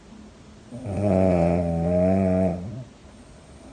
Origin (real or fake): real